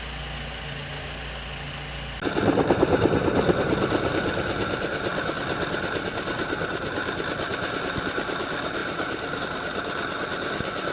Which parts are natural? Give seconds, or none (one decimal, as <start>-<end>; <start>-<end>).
0.0-10.9